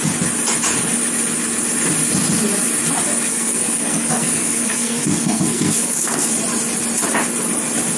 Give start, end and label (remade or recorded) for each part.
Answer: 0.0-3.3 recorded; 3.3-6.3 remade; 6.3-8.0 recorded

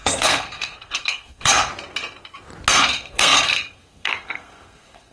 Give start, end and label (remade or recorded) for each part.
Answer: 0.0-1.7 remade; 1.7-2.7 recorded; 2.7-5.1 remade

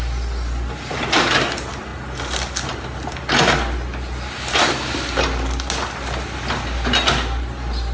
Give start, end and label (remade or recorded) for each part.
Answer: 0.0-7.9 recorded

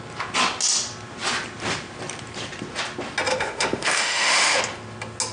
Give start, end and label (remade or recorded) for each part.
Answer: 0.0-3.3 recorded; 3.3-4.6 remade; 4.6-5.3 recorded

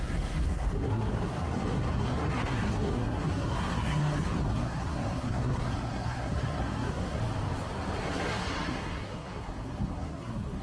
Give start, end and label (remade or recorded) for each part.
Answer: 0.0-7.2 remade; 7.2-8.0 recorded; 8.0-10.6 remade

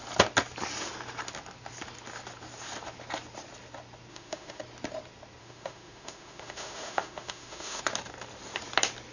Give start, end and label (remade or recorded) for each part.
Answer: 0.0-4.1 recorded; 4.1-4.6 remade; 4.6-5.4 recorded; 5.4-7.8 remade; 7.8-9.1 recorded

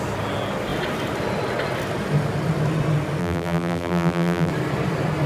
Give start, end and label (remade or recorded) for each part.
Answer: 0.0-3.2 recorded; 3.2-4.5 remade; 4.5-5.3 recorded